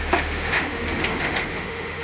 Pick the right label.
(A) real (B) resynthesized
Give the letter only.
B